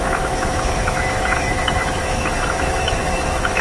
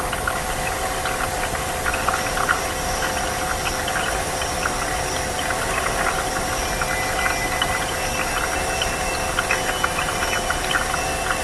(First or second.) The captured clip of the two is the second